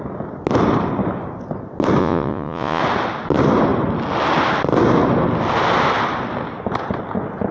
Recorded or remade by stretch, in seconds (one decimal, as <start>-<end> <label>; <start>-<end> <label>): 0.0-2.0 recorded; 2.0-2.8 remade; 2.8-7.5 recorded